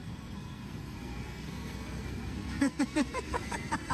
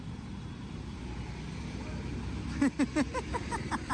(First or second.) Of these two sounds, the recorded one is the second